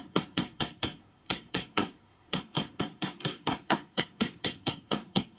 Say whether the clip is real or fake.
fake